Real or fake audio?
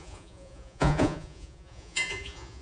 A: fake